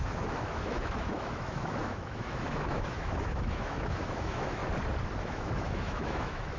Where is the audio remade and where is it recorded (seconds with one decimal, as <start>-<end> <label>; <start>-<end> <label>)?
0.0-4.6 remade; 4.6-5.2 recorded; 5.2-6.6 remade